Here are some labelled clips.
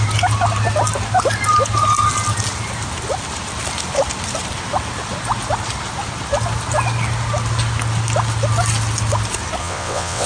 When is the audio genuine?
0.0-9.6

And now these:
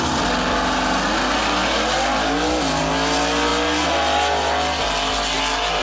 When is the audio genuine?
0.0-5.8